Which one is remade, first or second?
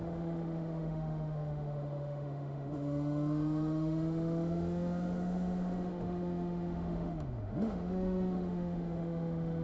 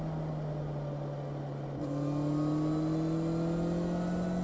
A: first